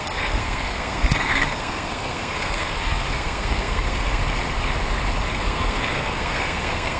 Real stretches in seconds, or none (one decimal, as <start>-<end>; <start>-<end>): 4.2-5.3